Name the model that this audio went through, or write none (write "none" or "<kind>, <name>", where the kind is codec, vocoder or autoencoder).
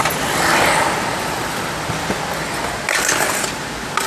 none